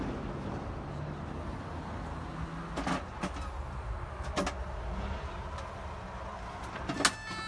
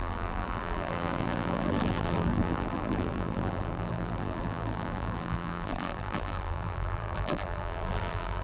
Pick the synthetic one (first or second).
second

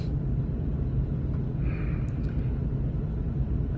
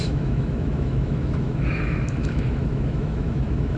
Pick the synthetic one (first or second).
second